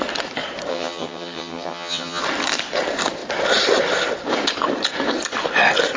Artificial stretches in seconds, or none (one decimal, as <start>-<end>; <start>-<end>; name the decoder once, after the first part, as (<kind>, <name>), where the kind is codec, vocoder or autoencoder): 0.7-2.2 (vocoder, HiFi-GAN)